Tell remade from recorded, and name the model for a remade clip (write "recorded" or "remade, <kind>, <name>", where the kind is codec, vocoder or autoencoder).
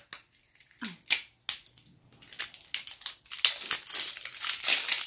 recorded